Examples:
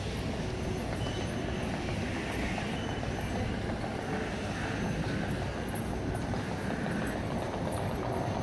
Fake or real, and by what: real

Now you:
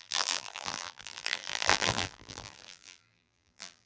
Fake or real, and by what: fake, vocoder, BigVGAN v2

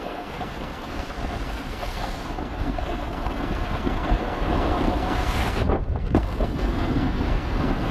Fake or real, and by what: fake, codec, SNAC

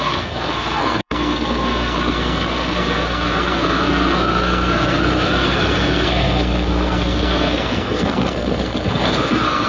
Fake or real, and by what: fake, codec, SNAC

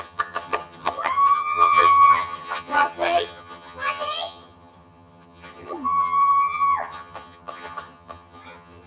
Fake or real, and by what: fake, vocoder, HiFi-GAN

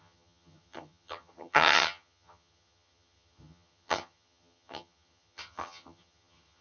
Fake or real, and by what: fake, vocoder, HiFi-GAN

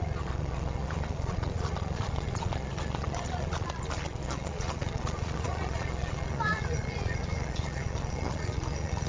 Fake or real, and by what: fake, vocoder, Vocos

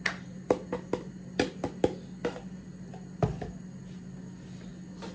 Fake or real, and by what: real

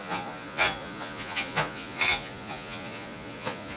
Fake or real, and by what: fake, vocoder, Vocos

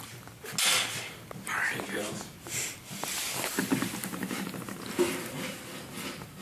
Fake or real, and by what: real